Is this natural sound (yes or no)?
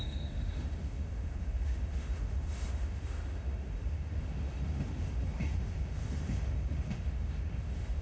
no